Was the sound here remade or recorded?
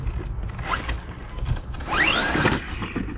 recorded